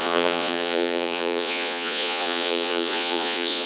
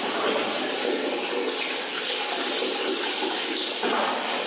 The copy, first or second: first